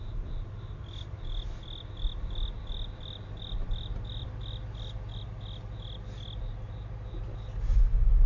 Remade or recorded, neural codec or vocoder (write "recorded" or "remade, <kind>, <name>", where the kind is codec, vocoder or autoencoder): recorded